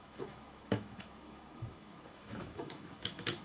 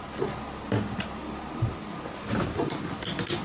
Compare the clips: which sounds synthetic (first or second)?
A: first